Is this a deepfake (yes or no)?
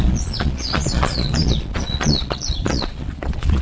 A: yes